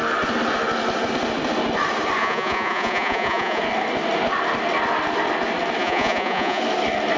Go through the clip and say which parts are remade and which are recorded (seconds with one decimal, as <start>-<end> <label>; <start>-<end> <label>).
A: 0.0-2.2 recorded; 2.2-3.6 remade; 3.6-5.8 recorded; 5.8-6.6 remade; 6.6-7.2 recorded